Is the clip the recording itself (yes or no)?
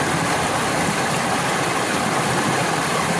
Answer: no